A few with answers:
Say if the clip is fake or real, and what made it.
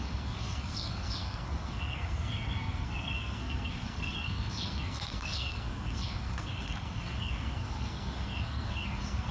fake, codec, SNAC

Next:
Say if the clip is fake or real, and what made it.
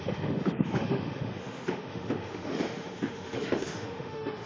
fake, autoencoder, DAC-VAE